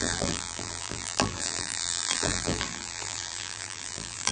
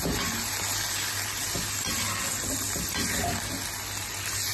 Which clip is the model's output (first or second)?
first